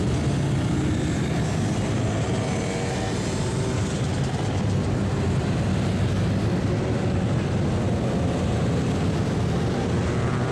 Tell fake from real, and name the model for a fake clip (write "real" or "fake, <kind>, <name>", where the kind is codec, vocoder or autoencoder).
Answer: real